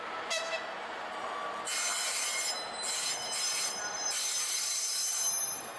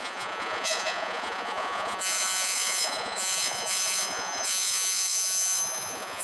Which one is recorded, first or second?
first